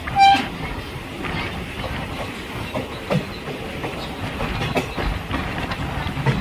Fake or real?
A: real